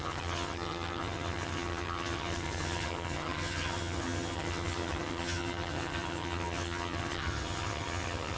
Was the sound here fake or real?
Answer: fake